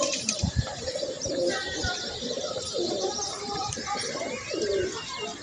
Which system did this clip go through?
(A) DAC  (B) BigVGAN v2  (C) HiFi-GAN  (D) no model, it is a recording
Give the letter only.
B